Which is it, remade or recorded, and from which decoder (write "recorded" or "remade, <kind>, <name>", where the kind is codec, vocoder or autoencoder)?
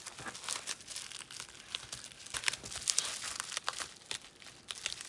recorded